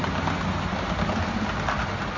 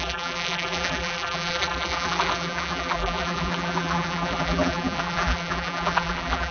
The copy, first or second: second